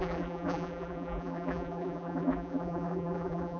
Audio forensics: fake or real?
fake